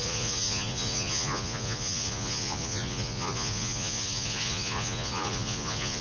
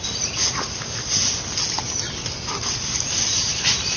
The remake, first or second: first